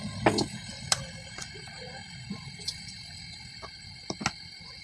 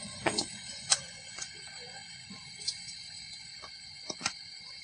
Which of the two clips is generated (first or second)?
second